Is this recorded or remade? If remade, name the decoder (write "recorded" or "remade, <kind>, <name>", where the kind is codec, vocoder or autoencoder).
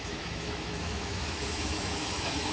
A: remade, autoencoder, DAC-VAE